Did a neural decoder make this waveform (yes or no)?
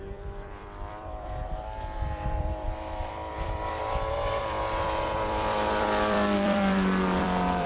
yes